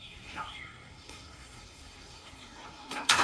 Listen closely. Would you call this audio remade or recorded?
remade